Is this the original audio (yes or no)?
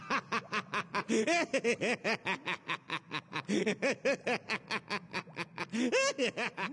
yes